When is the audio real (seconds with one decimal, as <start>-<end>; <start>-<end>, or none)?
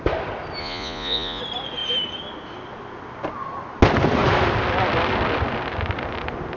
0.0-0.6; 1.4-6.6